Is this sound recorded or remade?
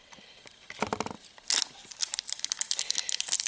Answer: recorded